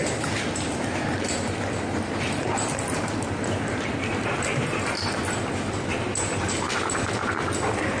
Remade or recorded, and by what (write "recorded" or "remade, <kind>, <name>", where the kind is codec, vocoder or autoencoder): remade, vocoder, BigVGAN v2